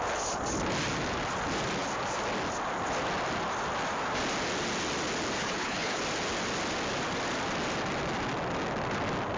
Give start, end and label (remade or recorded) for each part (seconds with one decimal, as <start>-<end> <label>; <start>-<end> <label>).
0.0-5.4 recorded; 5.4-6.0 remade; 6.0-9.4 recorded